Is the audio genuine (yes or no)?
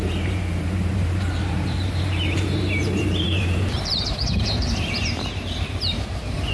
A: no